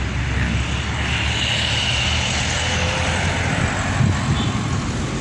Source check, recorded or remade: recorded